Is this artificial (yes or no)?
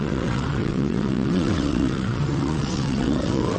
yes